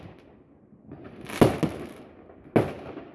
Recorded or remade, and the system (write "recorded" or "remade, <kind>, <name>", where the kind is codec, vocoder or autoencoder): recorded